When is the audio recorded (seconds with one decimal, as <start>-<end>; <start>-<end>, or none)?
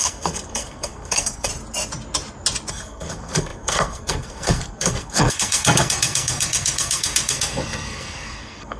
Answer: 1.5-2.7